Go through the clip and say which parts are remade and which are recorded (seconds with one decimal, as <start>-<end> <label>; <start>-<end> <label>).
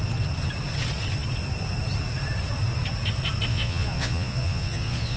0.0-3.5 recorded; 3.5-5.2 remade